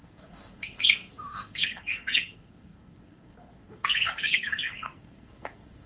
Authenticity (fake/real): fake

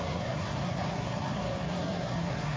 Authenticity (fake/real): fake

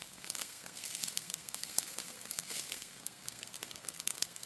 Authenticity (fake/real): fake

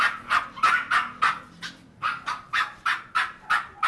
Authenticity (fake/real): real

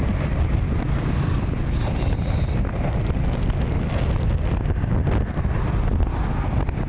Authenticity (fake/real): real